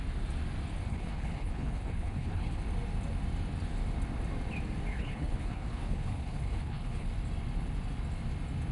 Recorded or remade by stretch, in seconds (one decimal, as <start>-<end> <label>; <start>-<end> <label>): 0.0-0.9 recorded; 0.9-2.6 remade; 2.6-4.9 recorded; 4.9-7.1 remade; 7.1-8.7 recorded